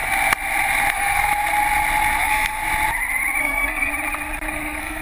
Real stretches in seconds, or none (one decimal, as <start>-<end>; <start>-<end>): 0.0-0.9; 1.3-2.2; 2.6-3.4; 3.9-4.5